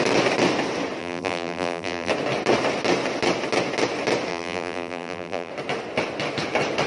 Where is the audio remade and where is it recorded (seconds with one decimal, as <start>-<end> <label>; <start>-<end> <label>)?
0.0-1.0 recorded; 1.0-2.1 remade; 2.1-4.3 recorded; 4.3-5.5 remade; 5.5-6.9 recorded